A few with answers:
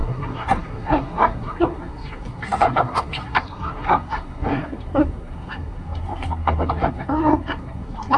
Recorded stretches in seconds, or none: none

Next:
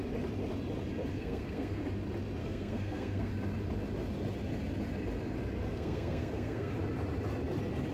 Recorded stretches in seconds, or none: 0.0-1.1; 1.8-2.4; 3.3-5.7; 6.7-7.9

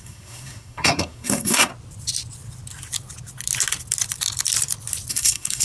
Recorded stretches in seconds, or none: 1.7-5.1